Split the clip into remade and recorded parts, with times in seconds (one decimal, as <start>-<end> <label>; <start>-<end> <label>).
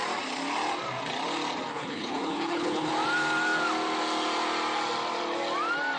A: 0.0-1.7 recorded; 1.7-2.9 remade; 2.9-6.0 recorded